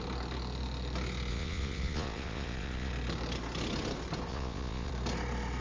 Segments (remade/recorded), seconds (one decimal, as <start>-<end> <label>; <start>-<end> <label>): 0.0-1.3 recorded; 1.3-2.9 remade; 2.9-4.3 recorded; 4.3-4.9 remade; 4.9-5.6 recorded